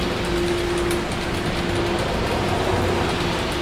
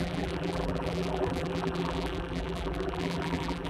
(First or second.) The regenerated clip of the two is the second